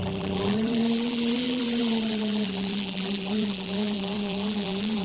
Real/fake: fake